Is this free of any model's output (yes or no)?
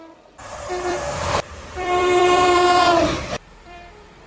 no